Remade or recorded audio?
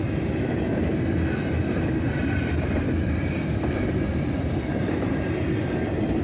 remade